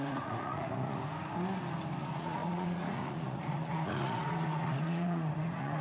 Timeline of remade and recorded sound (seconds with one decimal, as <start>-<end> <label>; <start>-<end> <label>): 0.0-1.0 remade; 1.0-2.0 recorded; 2.0-5.8 remade